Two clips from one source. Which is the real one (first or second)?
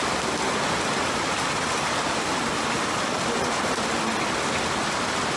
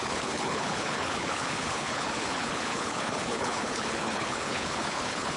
first